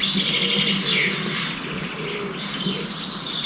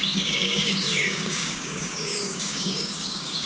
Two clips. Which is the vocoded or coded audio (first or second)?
second